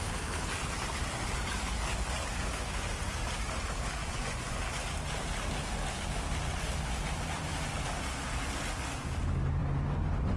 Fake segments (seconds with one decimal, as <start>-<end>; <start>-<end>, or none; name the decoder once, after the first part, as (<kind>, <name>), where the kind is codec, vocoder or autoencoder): 4.0-4.6 (vocoder, Vocos)